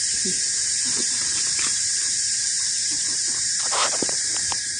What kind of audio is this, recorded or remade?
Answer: remade